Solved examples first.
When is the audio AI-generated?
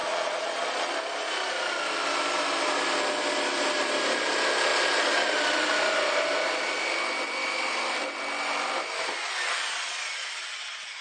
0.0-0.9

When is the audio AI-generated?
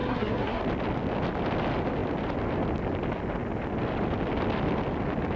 0.0-0.6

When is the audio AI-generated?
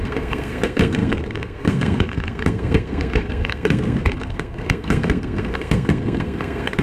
0.0-6.8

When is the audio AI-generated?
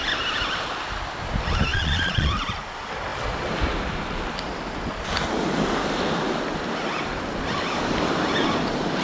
1.7-2.3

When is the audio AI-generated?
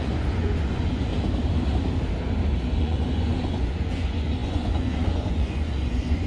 0.0-1.1; 2.8-6.3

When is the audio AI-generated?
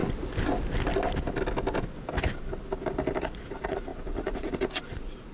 3.2-5.3